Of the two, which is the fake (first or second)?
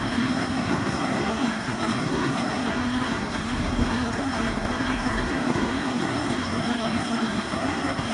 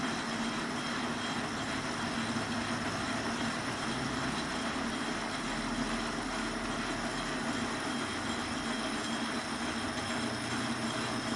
first